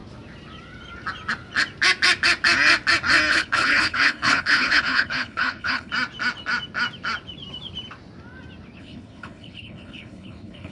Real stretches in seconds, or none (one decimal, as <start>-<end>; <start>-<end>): 0.0-3.3; 5.9-8.8